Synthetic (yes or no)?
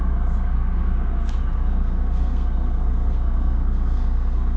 yes